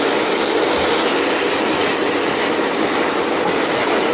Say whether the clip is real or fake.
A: real